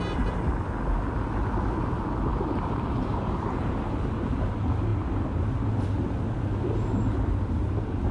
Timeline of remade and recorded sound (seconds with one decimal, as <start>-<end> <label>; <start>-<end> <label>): 0.0-2.3 recorded; 2.3-4.4 remade; 4.4-8.1 recorded